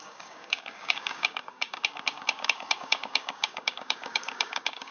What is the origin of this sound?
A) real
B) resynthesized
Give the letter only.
B